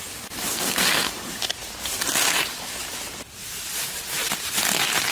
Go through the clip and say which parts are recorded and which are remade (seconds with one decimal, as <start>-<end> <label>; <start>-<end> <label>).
0.0-0.5 recorded; 0.5-1.1 remade; 1.1-5.1 recorded